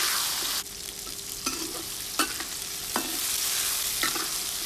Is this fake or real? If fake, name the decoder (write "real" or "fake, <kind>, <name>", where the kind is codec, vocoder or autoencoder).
real